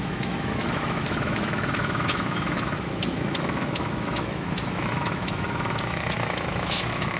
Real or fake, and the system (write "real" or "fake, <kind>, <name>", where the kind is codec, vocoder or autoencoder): fake, autoencoder, DAC-VAE